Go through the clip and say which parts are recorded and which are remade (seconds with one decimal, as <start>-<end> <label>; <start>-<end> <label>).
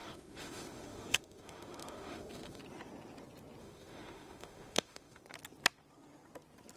0.0-2.6 remade; 2.6-3.6 recorded; 3.6-5.2 remade; 5.2-6.8 recorded